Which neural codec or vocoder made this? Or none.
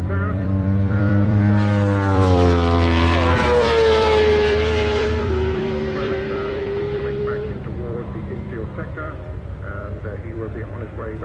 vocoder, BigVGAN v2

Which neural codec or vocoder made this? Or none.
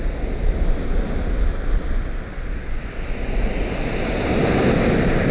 none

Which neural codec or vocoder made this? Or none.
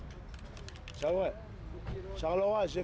none